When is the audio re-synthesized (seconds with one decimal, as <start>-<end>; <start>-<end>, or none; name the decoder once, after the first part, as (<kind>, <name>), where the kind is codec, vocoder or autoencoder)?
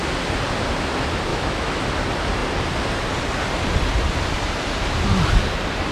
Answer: 1.3-1.8 (autoencoder, DAC-VAE)